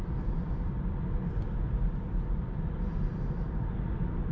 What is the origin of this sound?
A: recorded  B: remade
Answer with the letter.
A